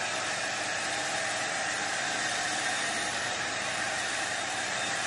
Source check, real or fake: fake